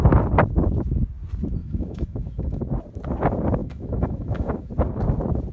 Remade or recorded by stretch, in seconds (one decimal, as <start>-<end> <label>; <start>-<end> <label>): 0.0-1.6 recorded; 1.6-2.6 remade; 2.6-3.6 recorded; 3.6-4.7 remade; 4.7-5.5 recorded